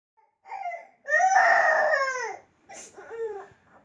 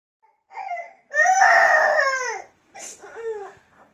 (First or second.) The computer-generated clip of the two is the first